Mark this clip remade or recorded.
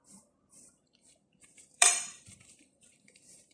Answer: remade